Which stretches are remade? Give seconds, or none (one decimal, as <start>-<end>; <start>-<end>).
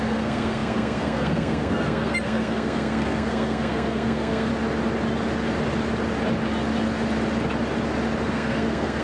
0.0-4.5; 8.3-9.0